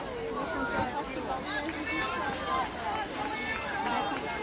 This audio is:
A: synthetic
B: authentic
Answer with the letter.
B